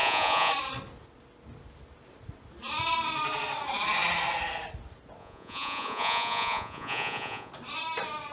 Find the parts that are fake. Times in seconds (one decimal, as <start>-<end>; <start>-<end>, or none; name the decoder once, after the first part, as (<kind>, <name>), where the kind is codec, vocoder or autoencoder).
0.0-0.5 (vocoder, Vocos); 5.2-7.5